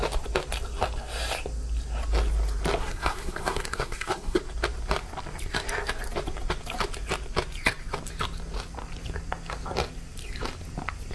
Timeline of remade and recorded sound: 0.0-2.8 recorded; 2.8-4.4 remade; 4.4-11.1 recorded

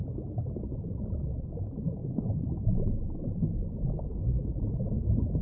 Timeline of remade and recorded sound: 0.0-5.4 recorded

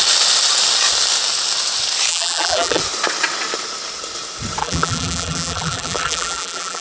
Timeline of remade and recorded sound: 0.0-2.1 recorded; 2.1-2.8 remade; 2.8-4.6 recorded; 4.6-6.8 remade

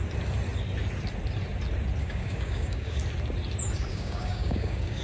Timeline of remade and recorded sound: 0.0-2.0 recorded; 2.0-3.0 remade; 3.0-3.9 recorded; 3.9-5.0 remade

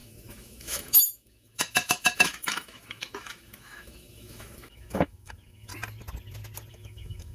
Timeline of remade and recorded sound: 0.0-5.7 remade; 5.7-6.7 recorded; 6.7-7.3 remade

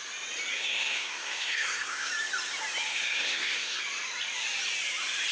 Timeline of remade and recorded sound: 0.0-0.5 recorded; 0.5-2.1 remade; 2.1-2.9 recorded; 2.9-3.8 remade; 3.8-5.3 recorded